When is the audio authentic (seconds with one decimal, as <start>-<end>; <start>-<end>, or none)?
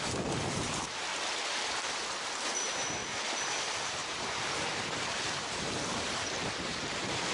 1.1-1.8; 3.0-3.6